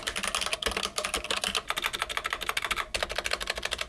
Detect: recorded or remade recorded